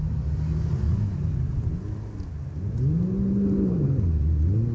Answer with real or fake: real